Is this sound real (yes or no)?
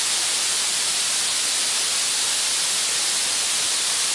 yes